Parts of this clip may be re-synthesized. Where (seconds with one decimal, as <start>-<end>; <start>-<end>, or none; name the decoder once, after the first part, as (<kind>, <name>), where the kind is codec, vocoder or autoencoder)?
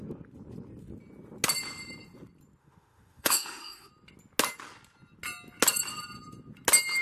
2.6-3.9 (autoencoder, DAC-VAE)